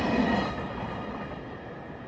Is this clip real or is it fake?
real